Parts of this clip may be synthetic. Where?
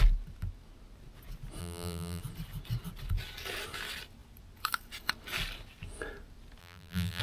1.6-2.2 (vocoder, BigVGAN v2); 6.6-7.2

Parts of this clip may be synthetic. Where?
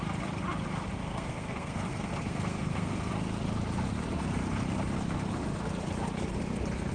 1.0-3.1 (codec, SNAC)